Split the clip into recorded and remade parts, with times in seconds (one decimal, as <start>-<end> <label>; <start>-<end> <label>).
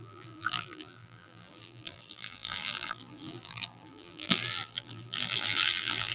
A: 0.0-6.1 remade